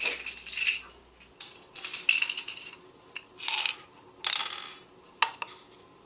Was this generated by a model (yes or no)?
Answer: no